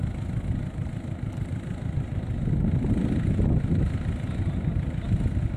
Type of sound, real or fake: real